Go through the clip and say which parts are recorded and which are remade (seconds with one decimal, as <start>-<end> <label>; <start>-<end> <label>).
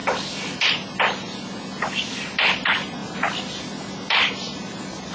0.0-5.1 recorded